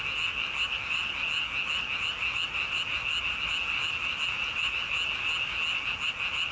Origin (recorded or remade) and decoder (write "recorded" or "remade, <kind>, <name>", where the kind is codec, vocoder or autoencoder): recorded